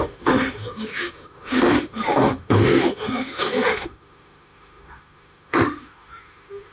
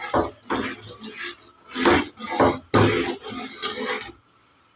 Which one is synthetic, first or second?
first